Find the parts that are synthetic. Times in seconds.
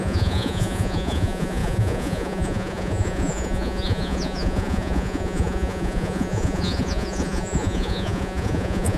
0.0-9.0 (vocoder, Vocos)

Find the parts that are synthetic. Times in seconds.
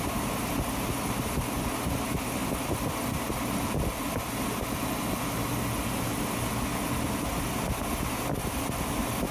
6.7-7.6 (vocoder, BigVGAN v2)